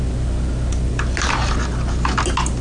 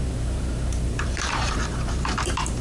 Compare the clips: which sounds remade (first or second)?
second